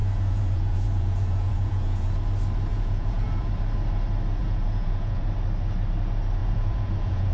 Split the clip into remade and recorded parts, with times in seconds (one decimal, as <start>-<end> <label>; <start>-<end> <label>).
0.0-2.2 remade; 2.2-2.7 recorded; 2.7-3.5 remade; 3.5-4.4 recorded; 4.4-5.2 remade; 5.2-6.4 recorded; 6.4-7.3 remade